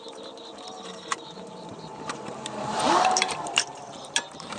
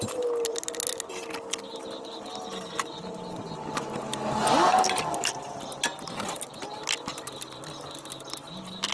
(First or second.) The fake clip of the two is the first